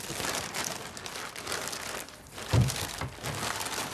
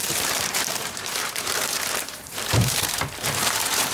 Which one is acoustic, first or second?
first